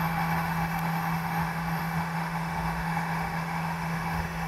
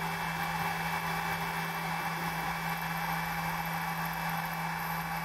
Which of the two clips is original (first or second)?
second